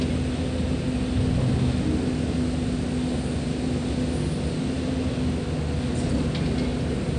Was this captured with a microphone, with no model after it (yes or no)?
yes